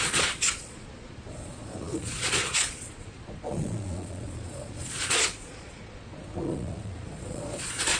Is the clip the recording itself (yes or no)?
no